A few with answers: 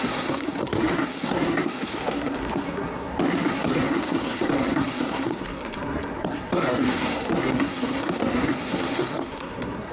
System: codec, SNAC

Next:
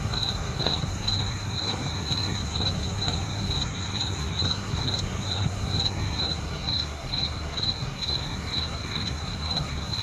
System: codec, SNAC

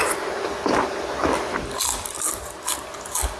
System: none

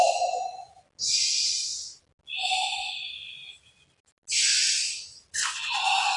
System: none